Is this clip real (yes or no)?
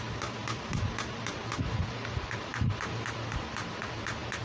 yes